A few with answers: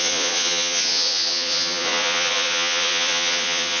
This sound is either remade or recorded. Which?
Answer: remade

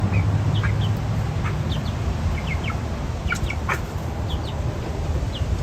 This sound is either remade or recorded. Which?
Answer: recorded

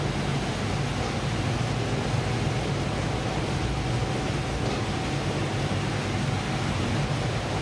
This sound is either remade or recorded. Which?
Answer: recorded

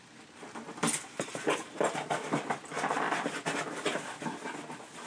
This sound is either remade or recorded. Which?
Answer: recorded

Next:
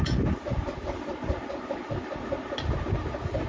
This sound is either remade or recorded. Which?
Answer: recorded